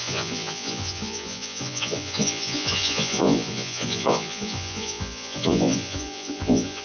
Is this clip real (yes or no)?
no